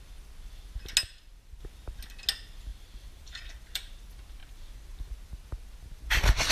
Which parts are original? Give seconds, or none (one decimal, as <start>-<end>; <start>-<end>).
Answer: 0.0-1.0; 1.6-2.7; 3.9-4.4; 5.1-6.5